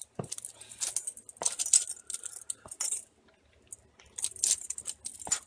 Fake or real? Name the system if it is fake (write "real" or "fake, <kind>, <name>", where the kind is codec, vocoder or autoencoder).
real